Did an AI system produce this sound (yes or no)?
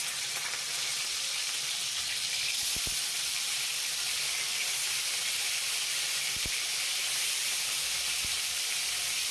yes